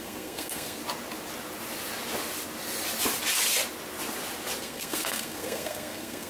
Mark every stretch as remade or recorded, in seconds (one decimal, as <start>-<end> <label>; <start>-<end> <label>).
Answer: 0.0-0.8 remade; 0.8-4.6 recorded; 4.6-6.3 remade